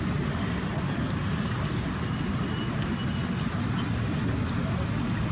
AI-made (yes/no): no